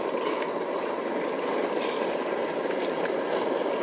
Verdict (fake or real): real